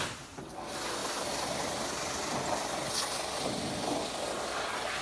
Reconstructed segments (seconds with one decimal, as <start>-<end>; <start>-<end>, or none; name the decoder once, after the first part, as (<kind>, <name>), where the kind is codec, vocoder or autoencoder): none